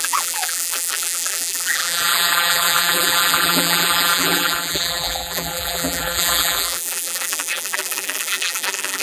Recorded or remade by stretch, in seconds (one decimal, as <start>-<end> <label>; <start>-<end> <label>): 0.0-9.0 remade